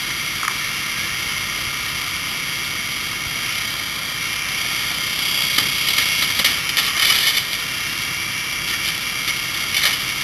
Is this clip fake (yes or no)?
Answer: no